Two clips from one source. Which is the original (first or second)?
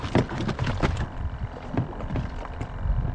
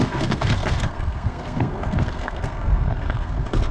first